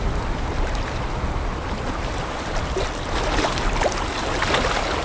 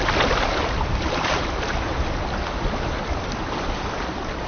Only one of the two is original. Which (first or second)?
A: first